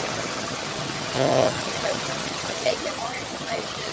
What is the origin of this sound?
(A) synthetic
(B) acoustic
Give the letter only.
A